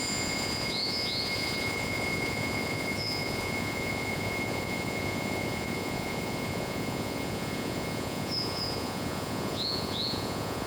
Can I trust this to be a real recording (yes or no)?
no